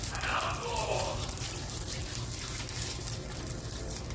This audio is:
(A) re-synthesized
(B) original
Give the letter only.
B